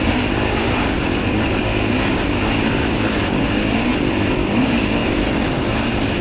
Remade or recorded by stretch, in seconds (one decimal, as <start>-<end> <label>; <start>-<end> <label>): 0.0-6.2 recorded